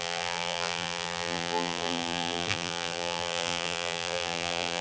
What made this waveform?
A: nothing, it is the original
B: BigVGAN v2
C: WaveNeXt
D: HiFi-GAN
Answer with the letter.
B